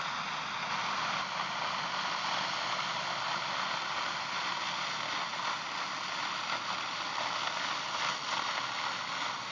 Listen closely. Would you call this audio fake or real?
real